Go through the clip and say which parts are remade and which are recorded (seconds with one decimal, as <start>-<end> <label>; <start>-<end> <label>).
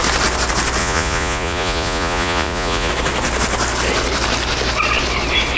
0.0-0.8 recorded; 0.8-2.9 remade; 2.9-5.6 recorded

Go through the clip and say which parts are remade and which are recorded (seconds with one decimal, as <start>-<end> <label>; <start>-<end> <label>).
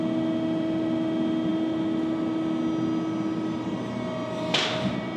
0.0-5.2 recorded